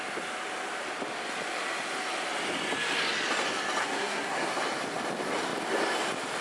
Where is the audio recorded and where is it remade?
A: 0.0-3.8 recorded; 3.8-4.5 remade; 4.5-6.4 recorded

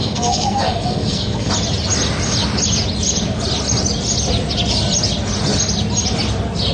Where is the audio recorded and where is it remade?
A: 0.0-1.5 remade; 1.5-6.7 recorded

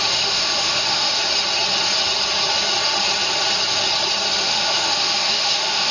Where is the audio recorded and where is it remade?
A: 0.0-1.2 remade; 1.2-4.4 recorded; 4.4-5.9 remade

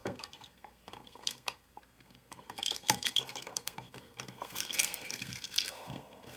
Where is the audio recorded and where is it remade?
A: 0.0-6.4 remade